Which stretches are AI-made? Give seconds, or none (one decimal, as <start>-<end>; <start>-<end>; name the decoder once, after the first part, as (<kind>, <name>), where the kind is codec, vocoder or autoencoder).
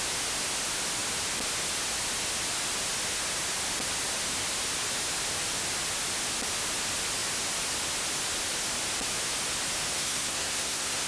9.9-11.1 (codec, SNAC)